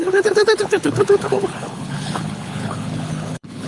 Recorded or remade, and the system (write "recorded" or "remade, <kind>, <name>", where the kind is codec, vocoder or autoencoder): remade, codec, HILCodec